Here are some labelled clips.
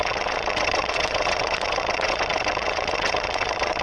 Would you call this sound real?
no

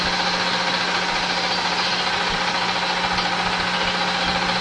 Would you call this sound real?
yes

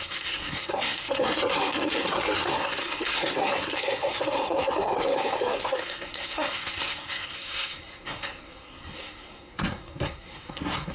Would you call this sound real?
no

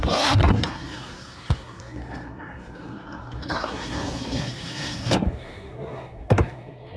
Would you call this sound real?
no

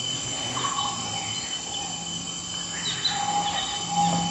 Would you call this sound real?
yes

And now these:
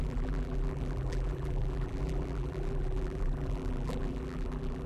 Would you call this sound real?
no